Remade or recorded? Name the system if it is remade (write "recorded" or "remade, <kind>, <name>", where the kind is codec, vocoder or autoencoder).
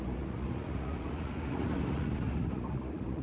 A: remade, vocoder, Vocos